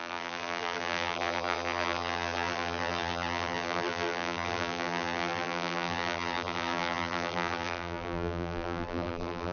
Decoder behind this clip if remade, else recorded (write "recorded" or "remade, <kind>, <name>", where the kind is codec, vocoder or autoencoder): remade, vocoder, BigVGAN v2